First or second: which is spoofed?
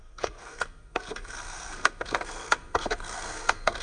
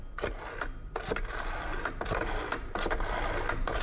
first